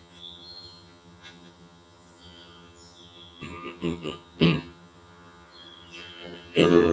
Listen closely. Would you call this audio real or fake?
fake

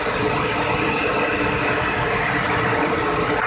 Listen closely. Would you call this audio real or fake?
real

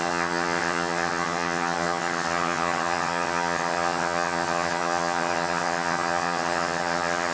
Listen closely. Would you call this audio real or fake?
fake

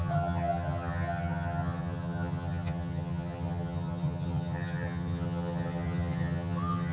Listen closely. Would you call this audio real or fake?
fake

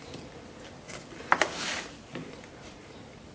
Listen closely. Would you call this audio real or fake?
real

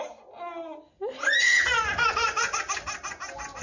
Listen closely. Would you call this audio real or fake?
real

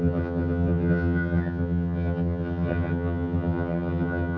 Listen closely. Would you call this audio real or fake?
fake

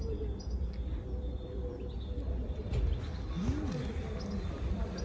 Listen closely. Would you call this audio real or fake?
real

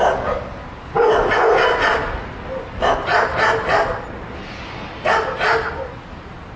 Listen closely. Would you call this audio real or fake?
real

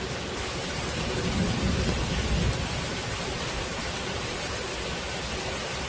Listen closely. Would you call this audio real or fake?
real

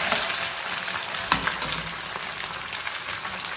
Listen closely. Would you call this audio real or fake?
real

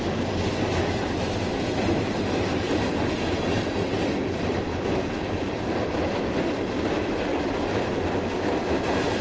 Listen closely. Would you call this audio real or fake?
real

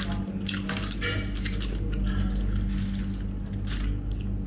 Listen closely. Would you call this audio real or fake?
real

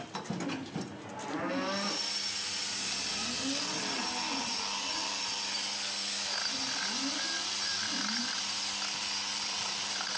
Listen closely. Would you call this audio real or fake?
real